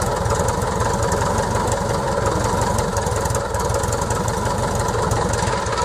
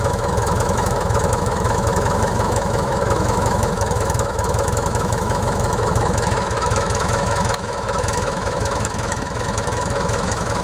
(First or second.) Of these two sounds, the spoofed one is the second